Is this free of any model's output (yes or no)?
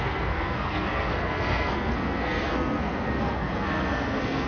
no